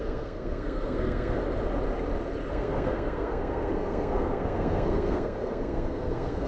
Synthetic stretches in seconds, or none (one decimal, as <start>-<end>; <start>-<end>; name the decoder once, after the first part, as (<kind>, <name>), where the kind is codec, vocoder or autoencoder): 0.0-1.4 (codec, SNAC); 2.5-6.5